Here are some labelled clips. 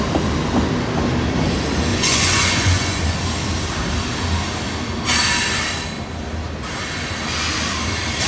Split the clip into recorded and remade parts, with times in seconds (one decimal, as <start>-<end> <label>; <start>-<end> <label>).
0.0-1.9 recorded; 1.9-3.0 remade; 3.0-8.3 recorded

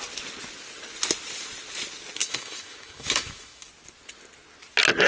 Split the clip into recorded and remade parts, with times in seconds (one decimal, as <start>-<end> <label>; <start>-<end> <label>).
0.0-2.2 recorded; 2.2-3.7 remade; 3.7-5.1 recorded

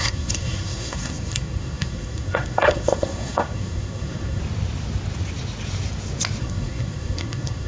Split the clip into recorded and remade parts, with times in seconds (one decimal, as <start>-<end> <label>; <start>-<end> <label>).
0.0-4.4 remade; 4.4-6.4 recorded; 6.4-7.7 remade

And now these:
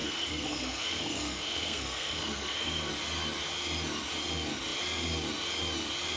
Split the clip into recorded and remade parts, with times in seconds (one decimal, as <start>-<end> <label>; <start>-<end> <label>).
0.0-2.9 remade; 2.9-6.2 recorded